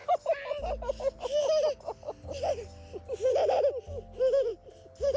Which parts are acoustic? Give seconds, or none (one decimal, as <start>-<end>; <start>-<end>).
3.1-4.5